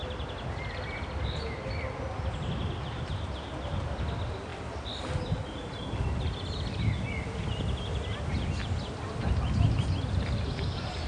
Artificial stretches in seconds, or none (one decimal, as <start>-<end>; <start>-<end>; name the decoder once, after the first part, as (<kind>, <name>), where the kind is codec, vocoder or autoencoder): none